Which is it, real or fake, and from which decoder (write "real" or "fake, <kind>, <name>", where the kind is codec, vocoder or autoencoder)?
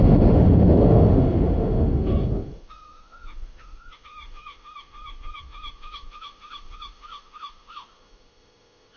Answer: fake, autoencoder, DAC-VAE